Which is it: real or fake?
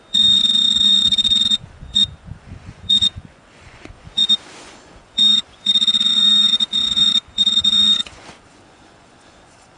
fake